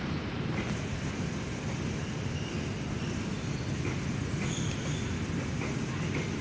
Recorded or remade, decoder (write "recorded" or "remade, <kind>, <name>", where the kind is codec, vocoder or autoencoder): recorded